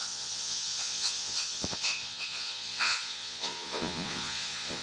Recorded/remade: remade